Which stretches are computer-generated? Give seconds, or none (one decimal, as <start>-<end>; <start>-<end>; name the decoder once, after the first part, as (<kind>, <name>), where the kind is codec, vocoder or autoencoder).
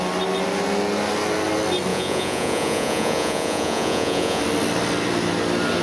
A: 1.9-4.4 (vocoder, Vocos)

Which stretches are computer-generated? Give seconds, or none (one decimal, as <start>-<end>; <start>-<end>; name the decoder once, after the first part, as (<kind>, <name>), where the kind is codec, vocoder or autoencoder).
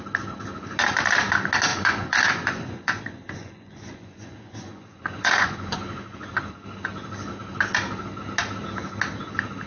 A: 1.7-6.5 (vocoder, Vocos)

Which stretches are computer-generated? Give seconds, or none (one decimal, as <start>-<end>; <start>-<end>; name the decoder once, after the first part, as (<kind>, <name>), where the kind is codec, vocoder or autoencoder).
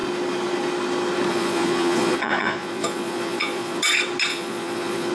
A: 1.3-3.8 (vocoder, Vocos); 4.3-5.1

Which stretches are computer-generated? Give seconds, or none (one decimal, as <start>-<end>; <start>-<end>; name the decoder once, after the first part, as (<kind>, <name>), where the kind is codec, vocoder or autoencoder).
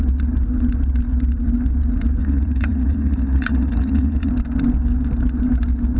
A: 2.2-4.3 (vocoder, Vocos)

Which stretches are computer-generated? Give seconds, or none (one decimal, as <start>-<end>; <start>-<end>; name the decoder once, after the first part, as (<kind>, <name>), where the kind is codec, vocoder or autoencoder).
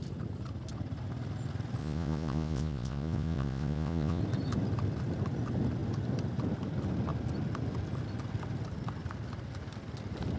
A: 1.8-4.2 (vocoder, Vocos)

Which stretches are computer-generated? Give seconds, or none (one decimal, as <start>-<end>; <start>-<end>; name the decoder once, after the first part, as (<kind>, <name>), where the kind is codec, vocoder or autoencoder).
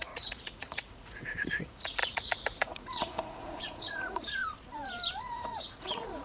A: 0.0-4.4 (vocoder, Vocos); 5.2-6.2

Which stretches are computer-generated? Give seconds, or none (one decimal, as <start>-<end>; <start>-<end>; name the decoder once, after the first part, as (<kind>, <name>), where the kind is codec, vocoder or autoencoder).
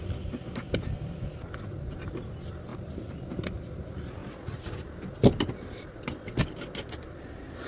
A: none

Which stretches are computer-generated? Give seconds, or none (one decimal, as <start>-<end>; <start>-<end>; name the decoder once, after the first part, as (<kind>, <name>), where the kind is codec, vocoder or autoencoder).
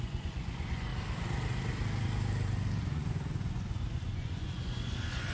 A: 0.0-0.9 (vocoder, Vocos); 2.8-5.3